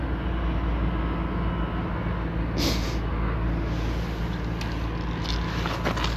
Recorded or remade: recorded